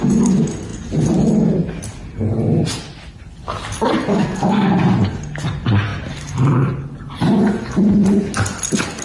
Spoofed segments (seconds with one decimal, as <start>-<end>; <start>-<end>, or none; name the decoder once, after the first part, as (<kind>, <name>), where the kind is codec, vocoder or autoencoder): 4.1-4.7 (codec, SNAC)